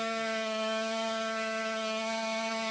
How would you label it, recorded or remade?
remade